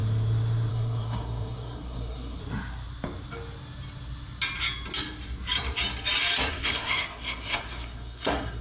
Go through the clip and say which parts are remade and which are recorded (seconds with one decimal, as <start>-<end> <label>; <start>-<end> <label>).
0.0-0.7 recorded; 0.7-2.4 remade; 2.4-6.5 recorded; 6.5-8.6 remade